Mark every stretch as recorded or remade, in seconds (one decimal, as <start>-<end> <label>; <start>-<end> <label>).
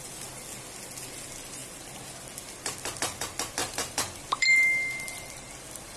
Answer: 0.0-3.6 recorded; 3.6-6.0 remade